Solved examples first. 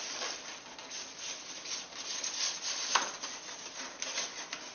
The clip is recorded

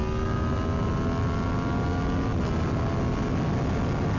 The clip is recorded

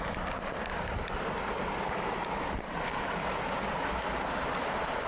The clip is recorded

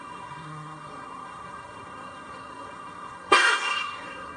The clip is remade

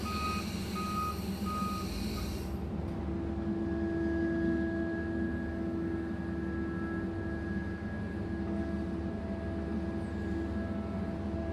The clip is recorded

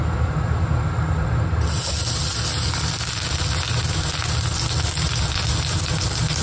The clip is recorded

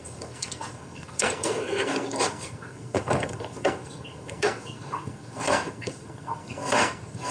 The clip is remade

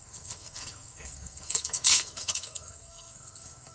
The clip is remade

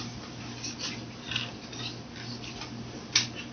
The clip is recorded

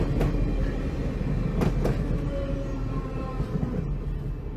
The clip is recorded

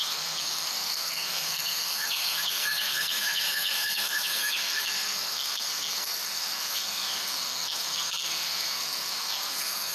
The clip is remade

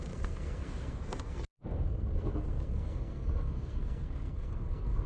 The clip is remade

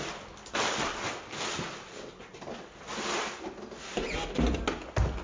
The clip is recorded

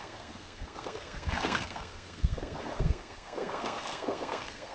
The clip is remade